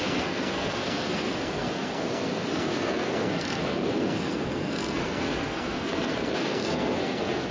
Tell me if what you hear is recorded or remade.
remade